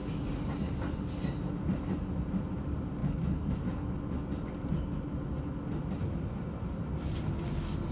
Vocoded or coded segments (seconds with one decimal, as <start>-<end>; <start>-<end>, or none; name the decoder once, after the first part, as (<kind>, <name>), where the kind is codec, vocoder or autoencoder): none